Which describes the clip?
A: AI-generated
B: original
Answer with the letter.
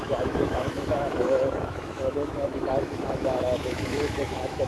A